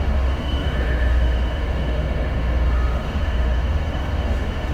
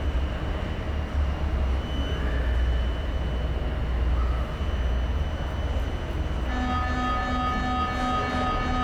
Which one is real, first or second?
second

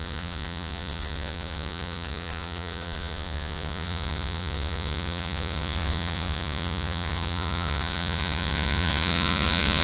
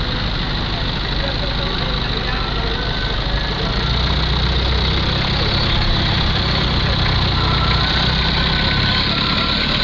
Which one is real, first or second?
second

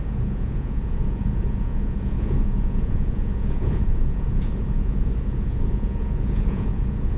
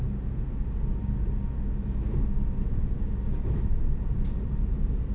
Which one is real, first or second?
second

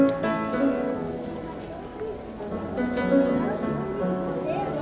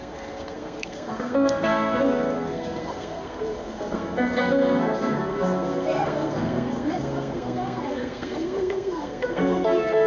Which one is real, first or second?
first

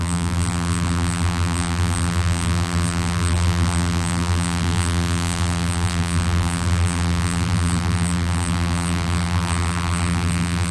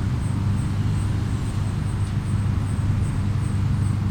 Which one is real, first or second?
second